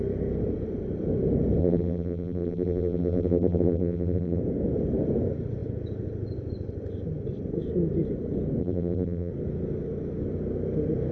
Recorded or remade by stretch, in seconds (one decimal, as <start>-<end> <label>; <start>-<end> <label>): 0.0-1.6 recorded; 1.6-4.4 remade; 4.4-8.6 recorded; 8.6-9.3 remade; 9.3-11.1 recorded